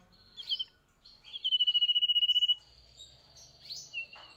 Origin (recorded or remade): recorded